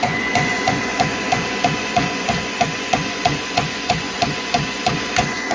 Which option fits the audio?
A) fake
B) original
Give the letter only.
A